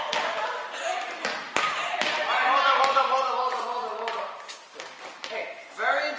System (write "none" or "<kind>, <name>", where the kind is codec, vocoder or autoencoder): none